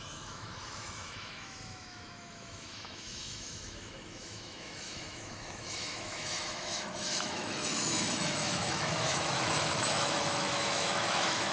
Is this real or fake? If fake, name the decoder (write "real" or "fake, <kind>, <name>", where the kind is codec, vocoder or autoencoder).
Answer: fake, autoencoder, DAC-VAE